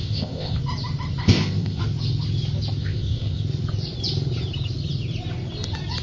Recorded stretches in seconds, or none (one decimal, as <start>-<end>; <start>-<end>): 0.6-1.2; 1.8-2.8; 3.4-6.0